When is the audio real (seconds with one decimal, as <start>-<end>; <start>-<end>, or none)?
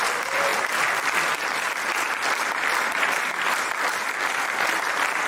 0.0-5.3